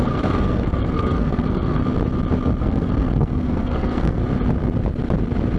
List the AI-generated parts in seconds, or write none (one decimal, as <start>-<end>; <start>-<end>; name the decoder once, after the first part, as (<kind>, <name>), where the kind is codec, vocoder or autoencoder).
0.0-1.8 (codec, SNAC); 2.6-4.2